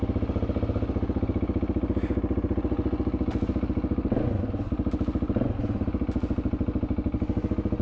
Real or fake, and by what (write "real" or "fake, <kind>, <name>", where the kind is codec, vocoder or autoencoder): real